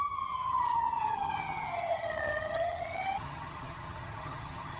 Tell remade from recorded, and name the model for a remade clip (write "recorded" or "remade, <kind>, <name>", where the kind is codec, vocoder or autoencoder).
remade, vocoder, HiFi-GAN